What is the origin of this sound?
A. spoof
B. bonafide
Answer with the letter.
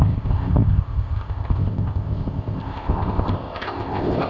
A